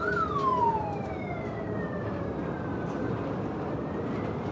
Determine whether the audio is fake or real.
real